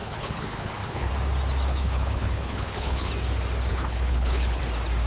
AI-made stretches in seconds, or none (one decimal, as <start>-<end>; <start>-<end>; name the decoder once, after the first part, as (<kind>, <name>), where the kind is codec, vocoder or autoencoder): 0.0-1.1 (codec, HILCodec); 1.7-3.1; 3.7-4.6